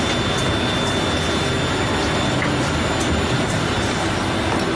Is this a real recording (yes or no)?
yes